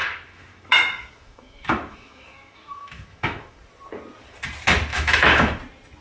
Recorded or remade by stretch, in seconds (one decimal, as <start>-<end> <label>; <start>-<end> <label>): 0.0-3.6 remade; 3.6-4.9 recorded; 4.9-5.6 remade; 5.6-6.0 recorded